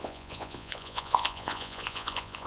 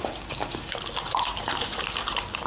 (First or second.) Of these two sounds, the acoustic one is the second